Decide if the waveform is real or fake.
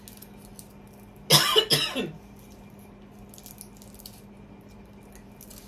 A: real